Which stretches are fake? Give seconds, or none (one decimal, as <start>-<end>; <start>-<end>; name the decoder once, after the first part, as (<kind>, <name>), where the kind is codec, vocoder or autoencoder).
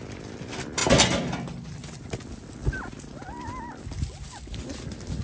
none